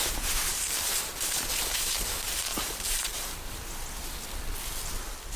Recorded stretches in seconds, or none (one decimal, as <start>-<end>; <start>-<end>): 0.0-0.5; 1.1-2.5; 3.7-5.4